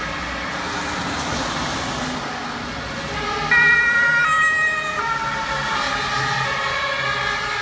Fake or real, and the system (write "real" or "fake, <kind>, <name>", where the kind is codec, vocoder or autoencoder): real